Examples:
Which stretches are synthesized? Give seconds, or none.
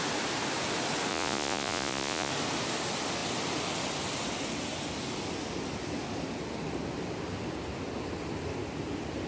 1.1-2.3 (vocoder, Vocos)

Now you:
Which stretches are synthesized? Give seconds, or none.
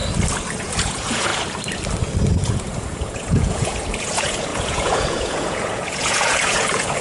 0.6-1.3 (vocoder, Vocos); 2.5-7.0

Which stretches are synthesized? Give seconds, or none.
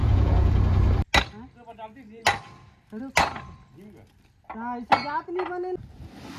0.0-0.6 (vocoder, Vocos)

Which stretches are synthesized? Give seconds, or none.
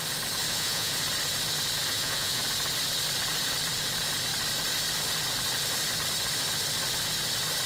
0.5-1.0 (vocoder, Vocos); 1.9-2.4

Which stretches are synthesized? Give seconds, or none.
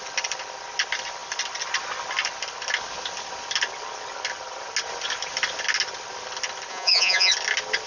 6.7-7.3 (vocoder, Vocos)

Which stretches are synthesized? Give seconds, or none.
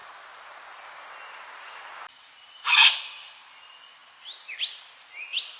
none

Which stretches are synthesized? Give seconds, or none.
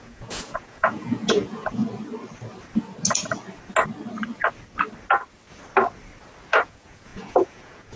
0.0-1.8 (vocoder, Vocos); 6.6-8.0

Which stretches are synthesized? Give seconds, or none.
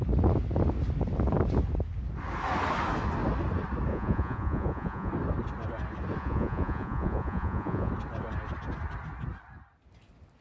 3.9-5.1 (vocoder, Vocos); 6.2-7.9